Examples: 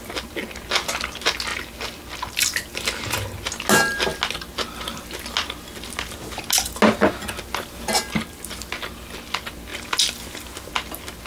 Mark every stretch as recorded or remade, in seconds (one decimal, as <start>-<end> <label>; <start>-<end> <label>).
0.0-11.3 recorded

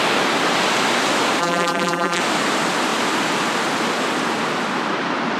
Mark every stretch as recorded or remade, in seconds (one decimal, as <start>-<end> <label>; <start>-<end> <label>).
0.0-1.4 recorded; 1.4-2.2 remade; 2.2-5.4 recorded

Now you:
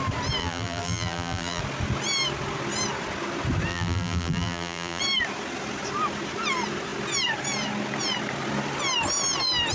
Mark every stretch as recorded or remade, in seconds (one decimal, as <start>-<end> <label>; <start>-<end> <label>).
0.0-0.4 recorded; 0.4-1.6 remade; 1.6-3.7 recorded; 3.7-5.0 remade; 5.0-9.7 recorded

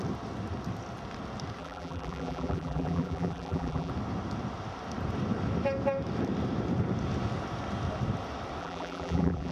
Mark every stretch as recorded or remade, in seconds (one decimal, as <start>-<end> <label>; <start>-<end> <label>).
0.0-1.6 recorded; 1.6-3.9 remade; 3.9-8.6 recorded; 8.6-9.5 remade

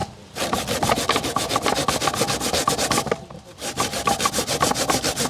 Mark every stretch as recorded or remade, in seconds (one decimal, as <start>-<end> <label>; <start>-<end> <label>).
0.0-5.3 recorded

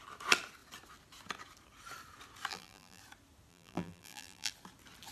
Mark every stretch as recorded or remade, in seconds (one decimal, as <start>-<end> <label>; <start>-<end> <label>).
0.0-2.5 recorded; 2.5-3.0 remade; 3.0-3.5 recorded; 3.5-4.5 remade; 4.5-5.1 recorded

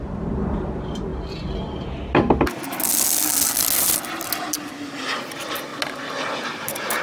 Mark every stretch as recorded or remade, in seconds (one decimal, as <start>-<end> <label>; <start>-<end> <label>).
0.0-1.1 remade; 1.1-5.3 recorded; 5.3-5.7 remade; 5.7-6.6 recorded; 6.6-7.0 remade